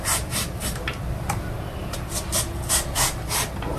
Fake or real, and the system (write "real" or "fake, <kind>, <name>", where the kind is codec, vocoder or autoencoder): real